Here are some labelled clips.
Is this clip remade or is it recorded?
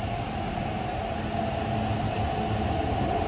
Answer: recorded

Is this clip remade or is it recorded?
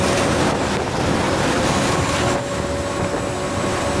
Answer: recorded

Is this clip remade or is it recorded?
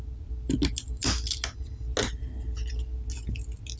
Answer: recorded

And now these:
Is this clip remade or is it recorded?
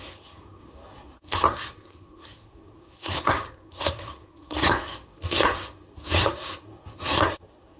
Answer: remade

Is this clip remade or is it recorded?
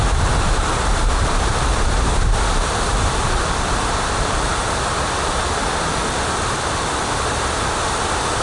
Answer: recorded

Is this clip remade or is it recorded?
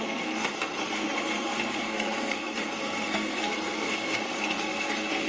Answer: remade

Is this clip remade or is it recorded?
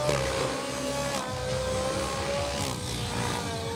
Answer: recorded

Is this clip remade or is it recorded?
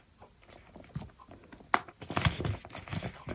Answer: recorded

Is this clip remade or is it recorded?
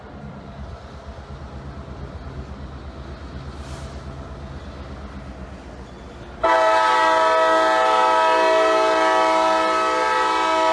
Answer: recorded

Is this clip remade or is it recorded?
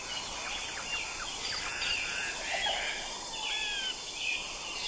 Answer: recorded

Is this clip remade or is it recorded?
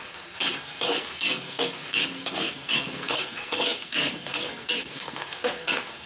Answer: remade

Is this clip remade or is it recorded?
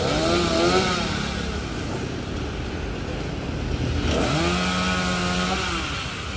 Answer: recorded